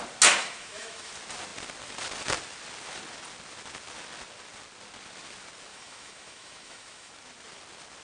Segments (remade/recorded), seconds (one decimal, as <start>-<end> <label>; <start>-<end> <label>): 0.0-0.4 recorded; 0.4-1.1 remade; 1.1-5.7 recorded; 5.7-7.1 remade; 7.1-8.0 recorded